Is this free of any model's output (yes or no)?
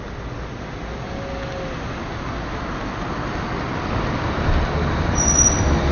yes